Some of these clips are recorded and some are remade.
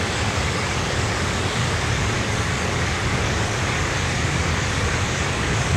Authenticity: remade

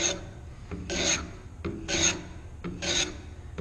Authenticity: recorded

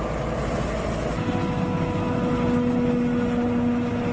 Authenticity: recorded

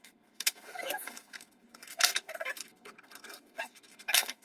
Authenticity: remade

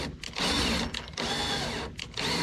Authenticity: recorded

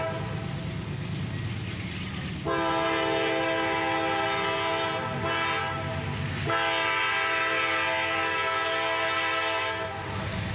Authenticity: recorded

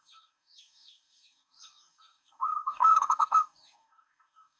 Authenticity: remade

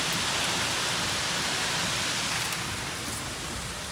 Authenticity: recorded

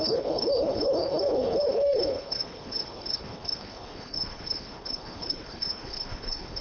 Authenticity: remade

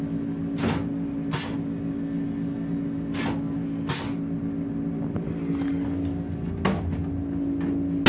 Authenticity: recorded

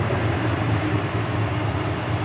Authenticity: remade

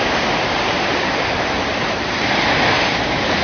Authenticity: remade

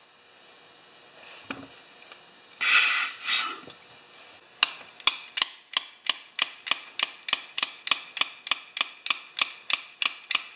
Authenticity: recorded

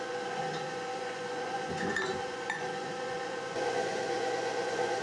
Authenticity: remade